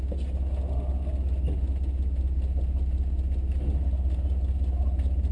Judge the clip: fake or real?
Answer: real